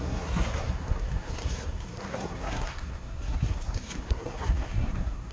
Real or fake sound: fake